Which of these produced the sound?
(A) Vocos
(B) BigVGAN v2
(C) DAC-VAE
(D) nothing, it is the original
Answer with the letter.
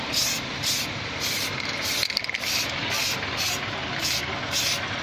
D